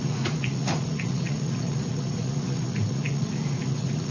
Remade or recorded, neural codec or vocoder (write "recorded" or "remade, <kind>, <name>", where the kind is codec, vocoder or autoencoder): remade, vocoder, Vocos